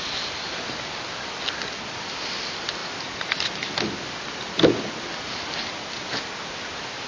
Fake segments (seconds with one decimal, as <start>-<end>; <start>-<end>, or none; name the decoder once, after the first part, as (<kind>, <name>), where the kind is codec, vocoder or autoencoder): 2.8-3.7 (vocoder, BigVGAN v2)